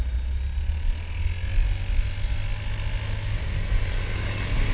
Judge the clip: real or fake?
real